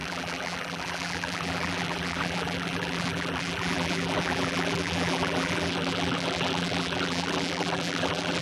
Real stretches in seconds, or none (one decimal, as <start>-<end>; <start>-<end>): none